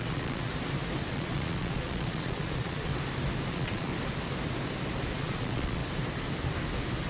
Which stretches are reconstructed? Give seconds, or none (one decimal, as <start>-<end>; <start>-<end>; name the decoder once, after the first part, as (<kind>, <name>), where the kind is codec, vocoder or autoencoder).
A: 0.0-0.5 (vocoder, Vocos); 1.1-2.9; 3.5-3.9; 5.2-5.8